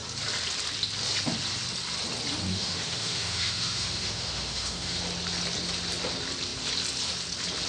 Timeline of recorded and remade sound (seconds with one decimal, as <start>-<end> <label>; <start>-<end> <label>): 0.0-2.5 recorded; 2.5-5.0 remade; 5.0-7.7 recorded